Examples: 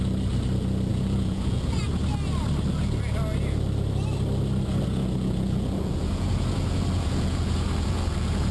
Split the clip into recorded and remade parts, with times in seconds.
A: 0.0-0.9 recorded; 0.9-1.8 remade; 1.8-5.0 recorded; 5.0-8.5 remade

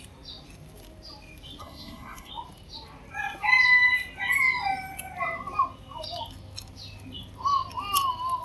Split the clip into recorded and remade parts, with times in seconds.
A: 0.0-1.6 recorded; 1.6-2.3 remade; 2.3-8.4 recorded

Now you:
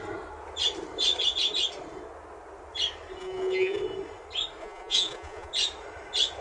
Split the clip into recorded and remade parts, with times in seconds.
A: 0.0-3.2 recorded; 3.2-3.8 remade; 3.8-4.6 recorded; 4.6-5.5 remade; 5.5-6.4 recorded

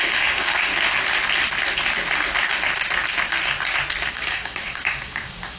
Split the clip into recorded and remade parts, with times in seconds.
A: 0.0-0.7 remade; 0.7-4.1 recorded; 4.1-5.6 remade

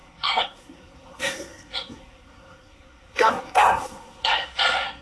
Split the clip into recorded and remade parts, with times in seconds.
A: 0.0-5.0 remade